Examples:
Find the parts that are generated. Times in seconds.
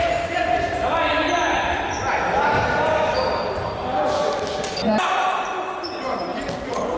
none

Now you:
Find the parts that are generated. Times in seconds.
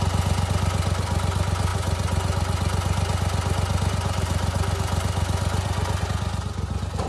none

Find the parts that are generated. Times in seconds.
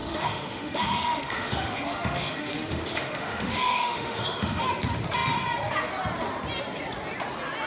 0.0-4.6 (autoencoder, DAC-VAE)